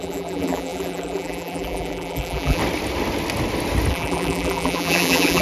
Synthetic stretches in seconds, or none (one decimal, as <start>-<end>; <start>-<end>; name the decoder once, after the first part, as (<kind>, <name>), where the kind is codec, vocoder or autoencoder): 0.0-2.6 (vocoder, BigVGAN v2); 3.9-5.4